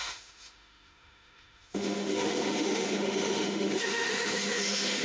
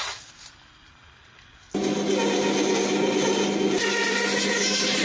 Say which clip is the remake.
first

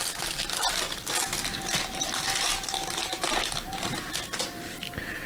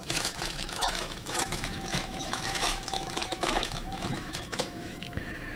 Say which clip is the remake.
second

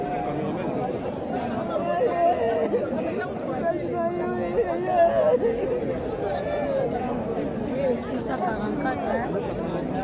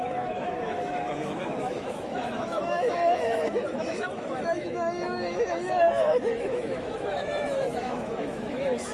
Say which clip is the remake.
second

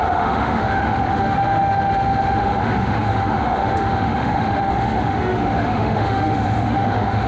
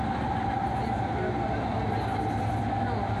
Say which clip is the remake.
first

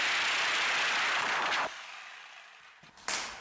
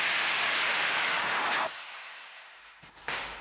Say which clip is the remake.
second